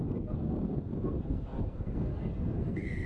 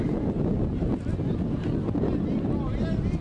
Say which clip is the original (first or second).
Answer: second